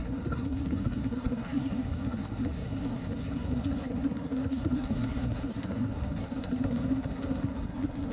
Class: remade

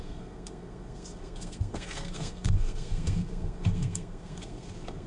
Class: remade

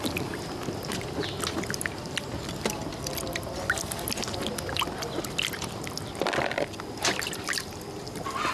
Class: recorded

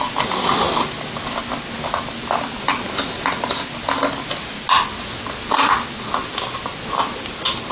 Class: recorded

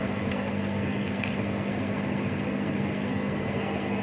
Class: remade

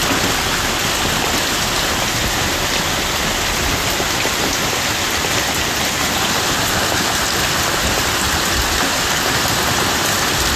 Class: recorded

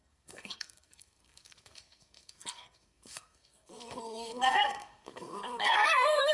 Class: remade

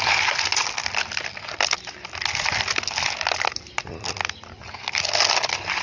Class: recorded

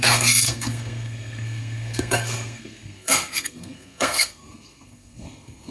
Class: remade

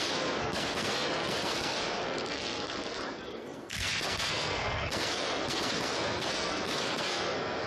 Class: remade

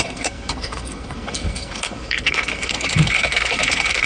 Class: remade